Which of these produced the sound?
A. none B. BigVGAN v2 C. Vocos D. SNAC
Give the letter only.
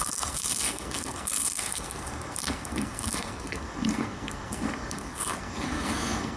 D